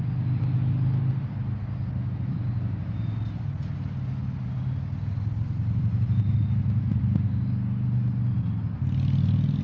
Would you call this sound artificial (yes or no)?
no